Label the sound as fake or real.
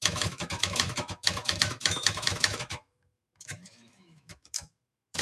fake